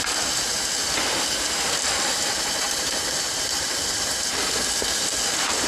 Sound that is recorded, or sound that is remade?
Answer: recorded